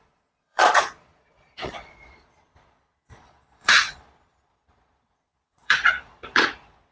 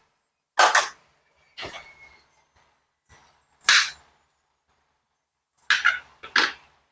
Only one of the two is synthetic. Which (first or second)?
first